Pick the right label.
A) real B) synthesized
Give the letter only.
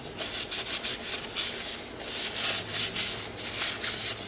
A